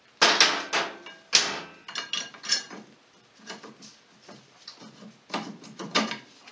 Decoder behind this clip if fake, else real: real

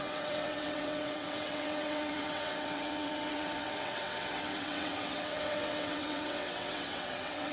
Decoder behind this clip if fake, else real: fake, vocoder, WaveNeXt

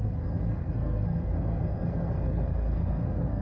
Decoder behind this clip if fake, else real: fake, codec, SNAC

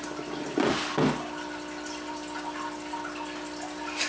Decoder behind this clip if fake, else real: real